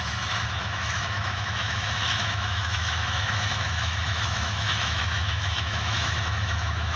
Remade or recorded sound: remade